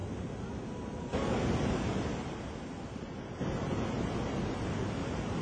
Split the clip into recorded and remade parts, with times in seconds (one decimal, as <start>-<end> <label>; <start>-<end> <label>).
0.0-5.4 recorded